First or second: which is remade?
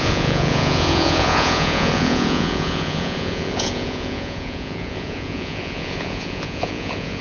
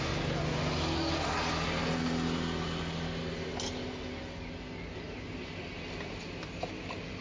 first